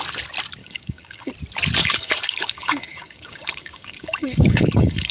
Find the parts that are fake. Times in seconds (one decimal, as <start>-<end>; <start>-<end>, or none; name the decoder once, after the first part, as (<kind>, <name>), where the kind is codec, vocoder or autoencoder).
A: 0.6-1.3 (codec, DAC); 1.8-5.1